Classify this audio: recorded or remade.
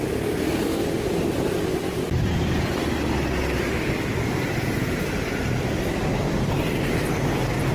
recorded